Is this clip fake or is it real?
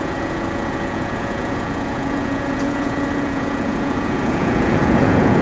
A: fake